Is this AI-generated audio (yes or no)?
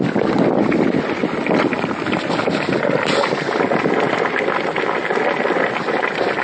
no